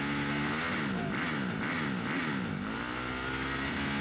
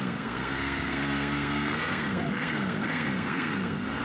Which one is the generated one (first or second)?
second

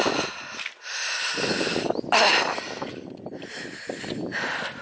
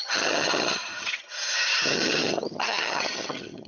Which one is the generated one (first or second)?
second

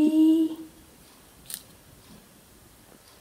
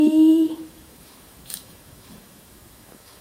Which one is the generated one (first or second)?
second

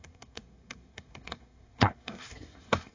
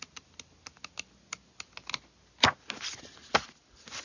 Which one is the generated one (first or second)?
first